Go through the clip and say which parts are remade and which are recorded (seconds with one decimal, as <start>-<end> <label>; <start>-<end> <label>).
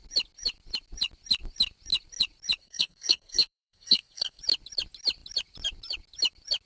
0.0-2.6 recorded; 2.6-4.4 remade; 4.4-6.7 recorded